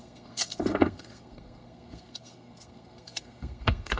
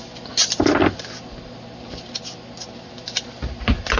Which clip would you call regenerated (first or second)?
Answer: first